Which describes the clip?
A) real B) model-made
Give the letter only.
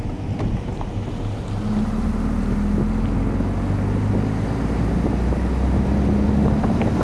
A